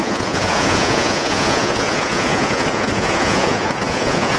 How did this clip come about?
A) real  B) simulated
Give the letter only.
B